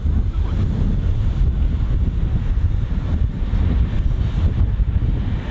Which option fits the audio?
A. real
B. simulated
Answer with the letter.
A